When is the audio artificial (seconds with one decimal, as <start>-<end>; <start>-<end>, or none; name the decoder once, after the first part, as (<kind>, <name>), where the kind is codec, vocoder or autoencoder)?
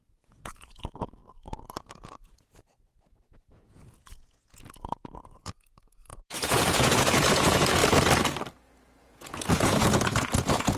0.0-1.2 (vocoder, Vocos); 1.8-7.8; 9.0-10.8